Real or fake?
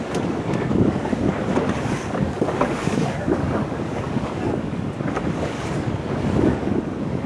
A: fake